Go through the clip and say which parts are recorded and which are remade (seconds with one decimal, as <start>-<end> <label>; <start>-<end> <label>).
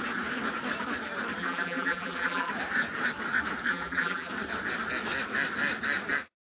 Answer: 0.0-1.4 recorded; 1.4-2.5 remade; 2.5-3.7 recorded; 3.7-4.3 remade; 4.3-6.5 recorded